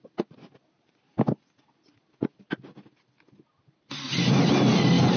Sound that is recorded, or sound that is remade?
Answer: recorded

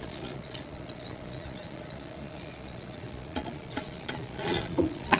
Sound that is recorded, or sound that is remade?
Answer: remade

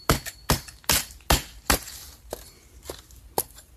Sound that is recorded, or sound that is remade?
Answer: recorded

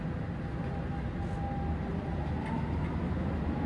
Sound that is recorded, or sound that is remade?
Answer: recorded